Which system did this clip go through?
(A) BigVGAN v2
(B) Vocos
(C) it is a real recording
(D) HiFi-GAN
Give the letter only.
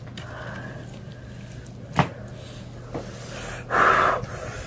A